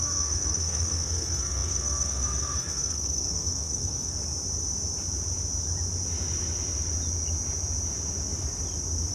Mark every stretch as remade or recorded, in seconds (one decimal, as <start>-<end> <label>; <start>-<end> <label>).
0.0-4.1 remade; 4.1-9.1 recorded